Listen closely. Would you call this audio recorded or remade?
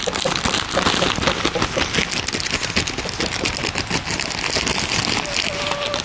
recorded